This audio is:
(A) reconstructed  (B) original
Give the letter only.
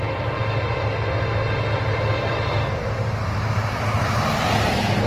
B